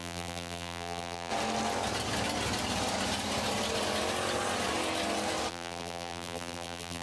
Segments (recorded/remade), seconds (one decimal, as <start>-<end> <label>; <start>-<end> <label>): 0.0-1.3 remade; 1.3-5.5 recorded; 5.5-7.0 remade